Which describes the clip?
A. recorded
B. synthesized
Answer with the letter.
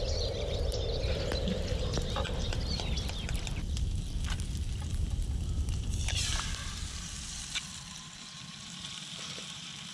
B